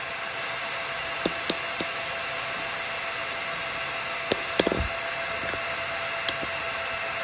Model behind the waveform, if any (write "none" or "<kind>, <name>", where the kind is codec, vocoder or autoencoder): none